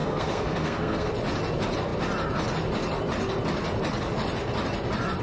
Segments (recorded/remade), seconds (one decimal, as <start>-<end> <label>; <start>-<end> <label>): 0.0-1.1 remade; 1.1-5.2 recorded